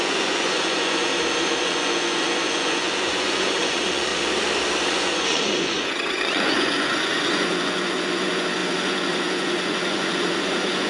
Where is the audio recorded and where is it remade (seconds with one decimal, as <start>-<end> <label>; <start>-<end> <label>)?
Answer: 0.0-1.1 remade; 1.1-1.6 recorded; 1.6-4.1 remade; 4.1-4.8 recorded; 4.8-10.9 remade